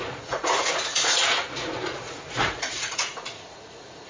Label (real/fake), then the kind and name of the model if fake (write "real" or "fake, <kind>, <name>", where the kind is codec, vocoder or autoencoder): fake, vocoder, Vocos